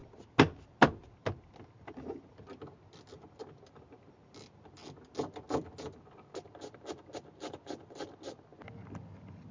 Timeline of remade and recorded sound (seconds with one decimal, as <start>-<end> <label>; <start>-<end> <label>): 0.0-9.5 recorded

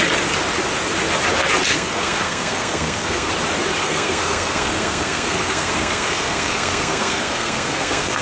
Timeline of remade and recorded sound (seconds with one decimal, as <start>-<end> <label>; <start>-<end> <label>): 0.0-1.7 recorded; 1.7-3.3 remade; 3.3-3.8 recorded; 3.8-8.2 remade